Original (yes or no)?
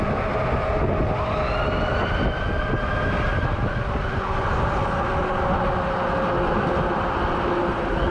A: yes